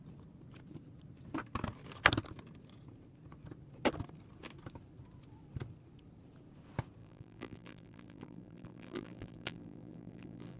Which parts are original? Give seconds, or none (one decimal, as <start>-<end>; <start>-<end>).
0.0-7.0